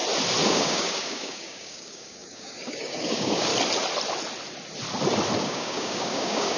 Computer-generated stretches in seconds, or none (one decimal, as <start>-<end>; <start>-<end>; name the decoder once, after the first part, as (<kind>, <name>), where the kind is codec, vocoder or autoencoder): 0.5-3.5 (codec, DAC); 5.4-6.6